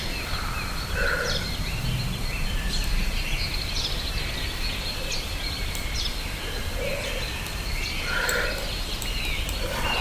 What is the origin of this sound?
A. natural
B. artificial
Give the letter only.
A